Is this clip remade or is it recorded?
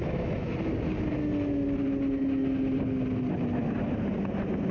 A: recorded